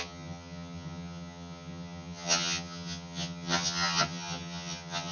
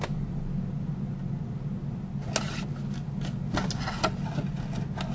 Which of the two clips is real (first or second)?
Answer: second